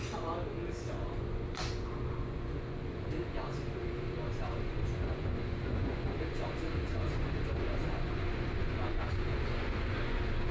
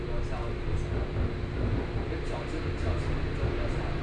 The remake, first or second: first